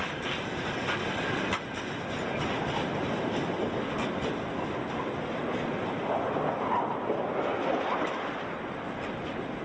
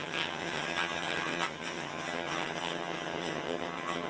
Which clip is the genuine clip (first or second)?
first